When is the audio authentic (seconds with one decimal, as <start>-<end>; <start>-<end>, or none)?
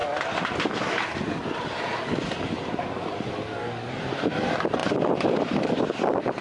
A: 0.0-3.1; 4.8-5.7